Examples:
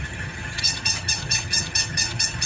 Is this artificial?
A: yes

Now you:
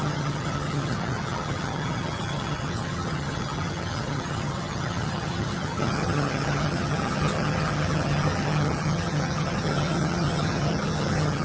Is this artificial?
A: yes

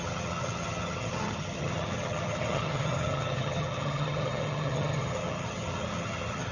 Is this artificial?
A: yes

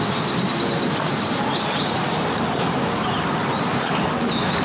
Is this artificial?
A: no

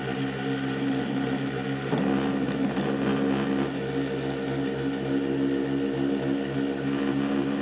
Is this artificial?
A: no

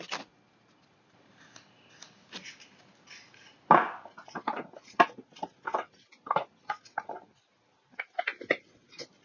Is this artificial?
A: no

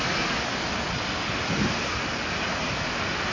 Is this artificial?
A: no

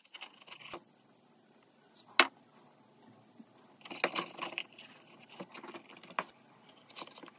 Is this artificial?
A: no